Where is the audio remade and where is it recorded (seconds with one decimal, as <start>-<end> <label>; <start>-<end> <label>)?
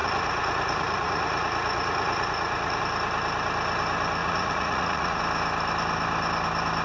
0.0-2.8 remade; 2.8-4.2 recorded; 4.2-5.2 remade; 5.2-6.8 recorded